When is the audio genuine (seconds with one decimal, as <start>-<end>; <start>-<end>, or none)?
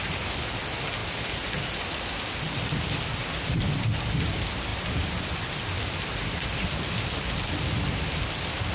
0.0-8.7